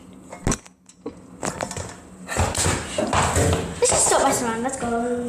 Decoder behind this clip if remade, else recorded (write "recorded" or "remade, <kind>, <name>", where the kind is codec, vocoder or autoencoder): recorded